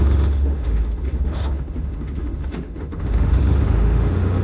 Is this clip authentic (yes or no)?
no